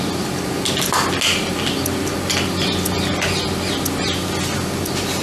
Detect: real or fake real